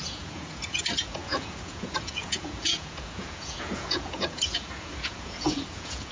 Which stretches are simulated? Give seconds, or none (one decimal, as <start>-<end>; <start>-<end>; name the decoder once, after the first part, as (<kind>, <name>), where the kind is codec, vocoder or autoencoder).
0.0-6.1 (vocoder, Vocos)